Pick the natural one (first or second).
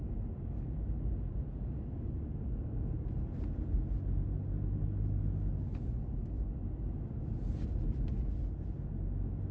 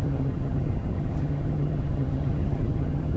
first